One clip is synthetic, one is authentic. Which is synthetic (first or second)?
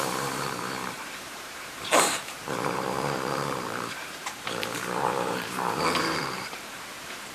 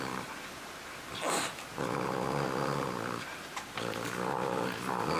first